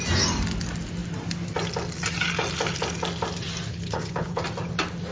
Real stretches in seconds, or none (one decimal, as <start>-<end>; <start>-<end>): 0.0-3.7; 4.4-5.1